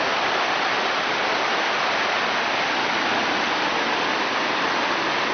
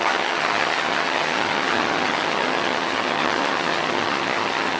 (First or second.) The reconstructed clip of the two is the second